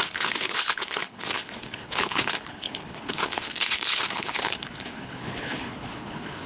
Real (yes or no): no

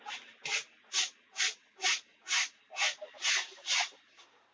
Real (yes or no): yes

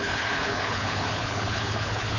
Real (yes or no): no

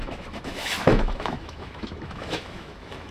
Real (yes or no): no